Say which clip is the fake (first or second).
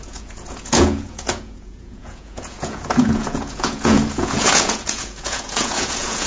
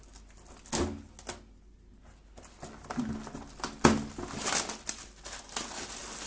first